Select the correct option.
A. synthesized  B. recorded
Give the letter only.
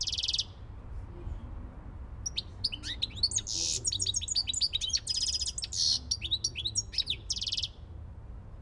B